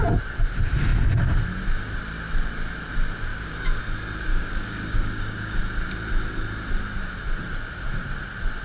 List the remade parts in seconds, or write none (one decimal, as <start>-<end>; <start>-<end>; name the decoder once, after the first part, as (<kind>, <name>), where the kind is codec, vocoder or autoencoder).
3.3-3.8 (codec, DAC); 4.3-5.6